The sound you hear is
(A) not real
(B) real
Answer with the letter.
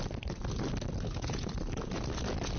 B